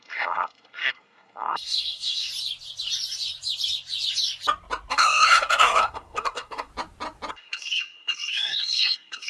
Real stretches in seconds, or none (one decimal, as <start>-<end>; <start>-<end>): 2.3-4.9; 6.7-7.3